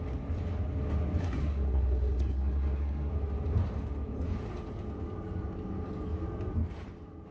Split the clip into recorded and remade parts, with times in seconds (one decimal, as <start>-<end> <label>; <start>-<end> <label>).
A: 0.0-1.2 recorded; 1.2-3.1 remade; 3.1-7.3 recorded